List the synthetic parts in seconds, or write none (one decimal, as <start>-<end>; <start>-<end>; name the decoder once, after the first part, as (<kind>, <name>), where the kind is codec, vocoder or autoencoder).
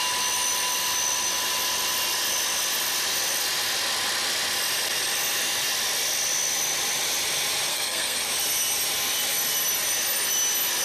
7.7-8.3 (codec, SNAC)